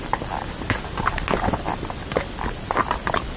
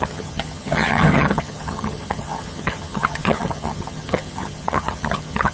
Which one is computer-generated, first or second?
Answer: second